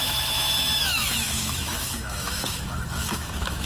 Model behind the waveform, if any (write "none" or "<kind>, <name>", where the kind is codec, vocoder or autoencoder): autoencoder, DAC-VAE